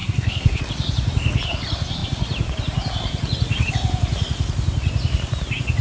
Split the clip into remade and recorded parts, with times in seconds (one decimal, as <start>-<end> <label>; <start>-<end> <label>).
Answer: 0.0-0.6 remade; 0.6-5.8 recorded